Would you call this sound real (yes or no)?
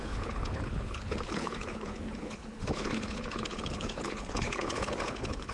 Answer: no